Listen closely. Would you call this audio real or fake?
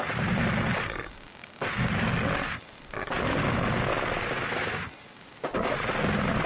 real